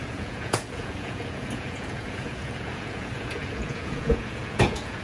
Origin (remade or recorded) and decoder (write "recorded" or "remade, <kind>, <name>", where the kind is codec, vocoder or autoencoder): remade, vocoder, Vocos